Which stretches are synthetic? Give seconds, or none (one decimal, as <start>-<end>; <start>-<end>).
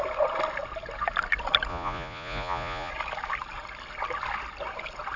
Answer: 1.7-2.9